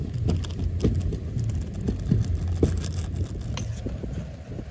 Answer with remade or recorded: recorded